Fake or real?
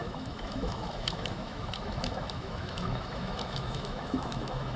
fake